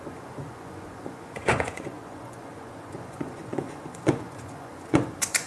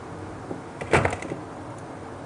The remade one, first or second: first